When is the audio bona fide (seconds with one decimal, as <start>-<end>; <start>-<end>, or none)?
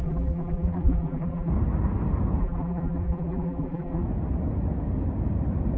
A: 1.5-2.4; 4.0-5.8